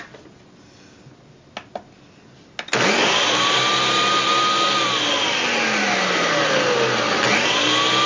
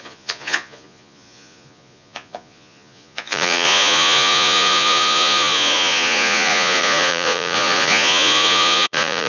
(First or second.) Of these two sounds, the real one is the first